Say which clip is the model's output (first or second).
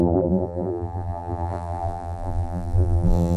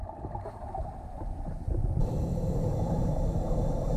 first